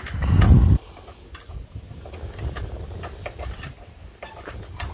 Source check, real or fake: real